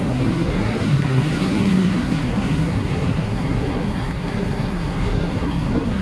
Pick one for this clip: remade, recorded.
remade